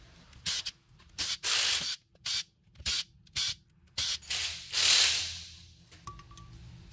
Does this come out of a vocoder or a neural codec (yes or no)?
no